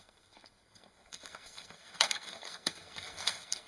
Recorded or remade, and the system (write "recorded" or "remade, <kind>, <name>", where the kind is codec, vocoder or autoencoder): remade, codec, SNAC